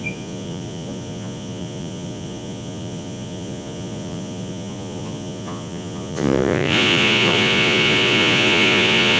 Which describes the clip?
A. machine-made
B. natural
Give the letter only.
A